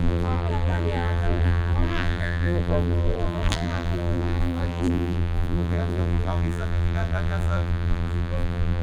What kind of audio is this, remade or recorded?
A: remade